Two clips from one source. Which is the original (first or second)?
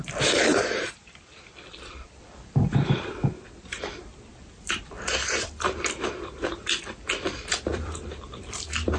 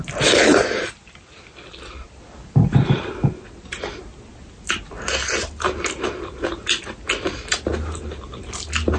second